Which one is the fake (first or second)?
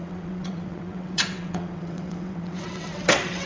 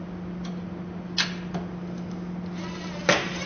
first